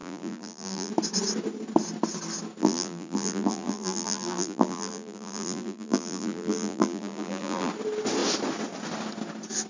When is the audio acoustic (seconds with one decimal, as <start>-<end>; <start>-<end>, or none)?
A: 0.9-2.6; 7.7-9.7